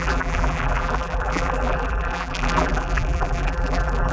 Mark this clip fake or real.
fake